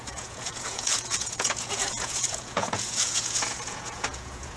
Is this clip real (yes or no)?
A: no